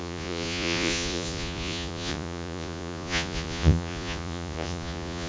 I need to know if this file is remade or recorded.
remade